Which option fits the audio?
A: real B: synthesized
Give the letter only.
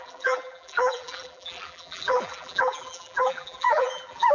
B